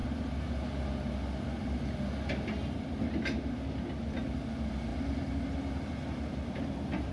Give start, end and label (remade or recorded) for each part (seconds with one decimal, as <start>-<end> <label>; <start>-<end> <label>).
0.0-7.1 recorded

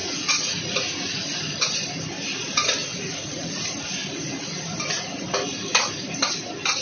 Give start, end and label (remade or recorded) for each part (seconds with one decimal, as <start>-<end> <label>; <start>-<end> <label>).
0.0-0.6 remade; 0.6-2.8 recorded; 2.8-3.5 remade; 3.5-6.8 recorded

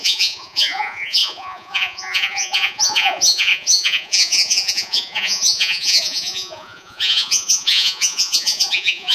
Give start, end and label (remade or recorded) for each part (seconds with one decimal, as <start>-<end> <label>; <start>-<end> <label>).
0.0-9.1 remade

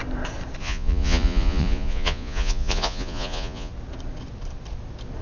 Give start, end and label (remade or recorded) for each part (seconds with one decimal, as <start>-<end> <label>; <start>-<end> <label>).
0.0-0.6 recorded; 0.6-3.7 remade; 3.7-5.2 recorded

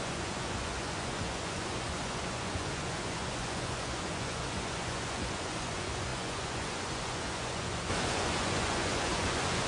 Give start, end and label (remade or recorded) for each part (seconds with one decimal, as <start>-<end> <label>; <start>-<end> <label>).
0.0-9.7 remade

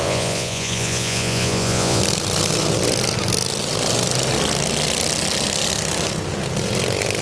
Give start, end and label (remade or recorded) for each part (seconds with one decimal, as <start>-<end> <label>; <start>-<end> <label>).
0.0-2.0 remade; 2.0-7.2 recorded

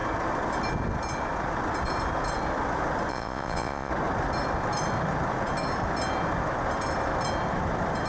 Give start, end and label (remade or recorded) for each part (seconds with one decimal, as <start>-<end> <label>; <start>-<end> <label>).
0.0-3.1 recorded; 3.1-3.9 remade; 3.9-8.1 recorded